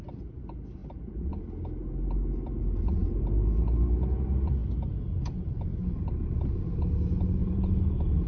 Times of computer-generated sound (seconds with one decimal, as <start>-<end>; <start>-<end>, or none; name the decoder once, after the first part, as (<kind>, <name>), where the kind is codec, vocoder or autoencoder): 7.4-8.3 (vocoder, Vocos)